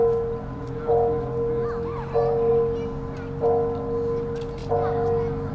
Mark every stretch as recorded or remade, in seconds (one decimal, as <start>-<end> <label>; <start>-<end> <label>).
0.0-5.5 recorded